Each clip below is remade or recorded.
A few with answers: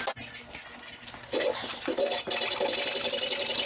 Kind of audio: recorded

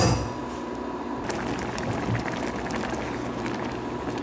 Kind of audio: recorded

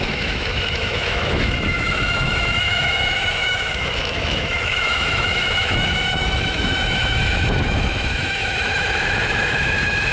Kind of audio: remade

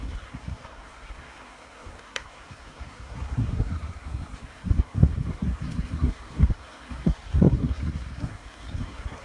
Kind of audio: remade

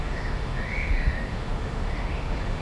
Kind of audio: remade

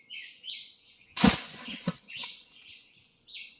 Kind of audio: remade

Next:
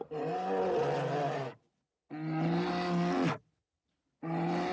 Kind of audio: recorded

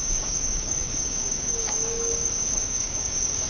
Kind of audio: remade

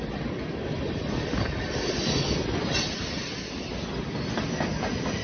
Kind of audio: recorded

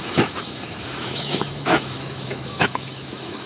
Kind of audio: remade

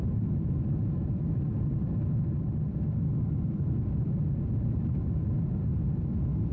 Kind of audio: recorded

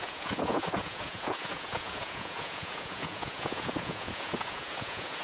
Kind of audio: remade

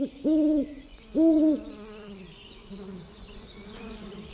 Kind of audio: remade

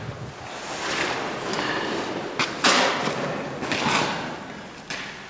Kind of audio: recorded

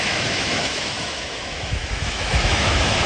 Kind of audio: remade